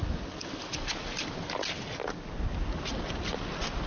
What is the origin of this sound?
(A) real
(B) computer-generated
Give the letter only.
A